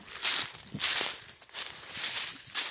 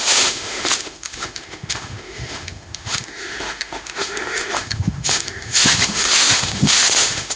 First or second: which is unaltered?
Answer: first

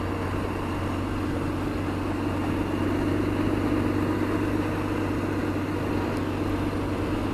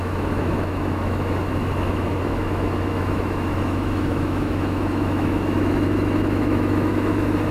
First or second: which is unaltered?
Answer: first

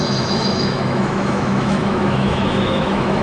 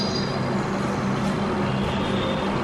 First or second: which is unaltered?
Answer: second